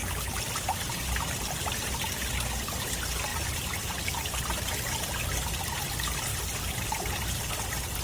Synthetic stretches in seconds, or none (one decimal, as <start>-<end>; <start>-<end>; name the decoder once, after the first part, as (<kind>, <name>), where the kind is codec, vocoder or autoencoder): 0.0-2.2 (vocoder, BigVGAN v2); 3.3-5.0; 6.3-7.5